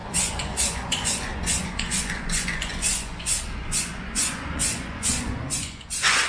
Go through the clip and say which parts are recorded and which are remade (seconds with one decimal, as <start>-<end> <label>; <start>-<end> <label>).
0.0-6.3 remade